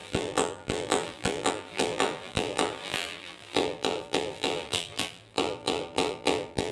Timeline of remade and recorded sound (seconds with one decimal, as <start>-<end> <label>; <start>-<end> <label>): 0.0-6.7 remade